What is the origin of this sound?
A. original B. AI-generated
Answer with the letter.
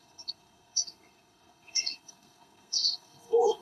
B